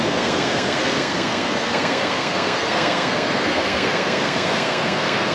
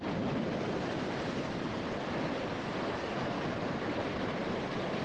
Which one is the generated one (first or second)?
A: first